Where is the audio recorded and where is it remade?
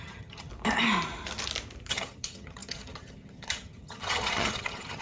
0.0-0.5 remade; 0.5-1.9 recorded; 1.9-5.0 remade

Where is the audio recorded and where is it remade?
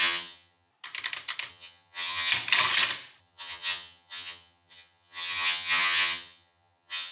0.0-0.7 remade; 0.7-1.5 recorded; 1.5-2.3 remade; 2.3-3.2 recorded; 3.2-7.1 remade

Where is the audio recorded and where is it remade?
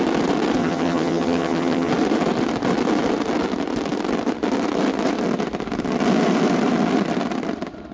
0.0-0.6 recorded; 0.6-1.9 remade; 1.9-7.9 recorded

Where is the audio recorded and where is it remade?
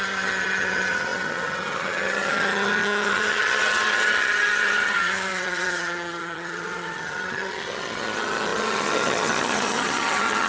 0.0-10.5 remade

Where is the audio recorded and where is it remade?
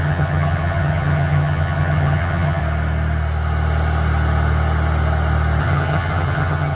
0.0-2.6 remade; 2.6-5.6 recorded; 5.6-6.8 remade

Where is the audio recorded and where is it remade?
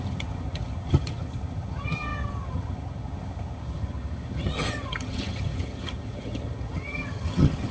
0.0-7.7 remade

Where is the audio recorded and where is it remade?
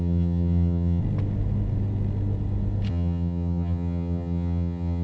0.0-1.0 remade; 1.0-2.9 recorded; 2.9-5.0 remade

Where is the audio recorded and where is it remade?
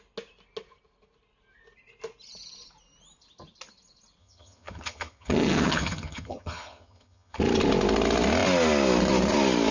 0.0-4.2 recorded; 4.2-7.4 remade; 7.4-9.7 recorded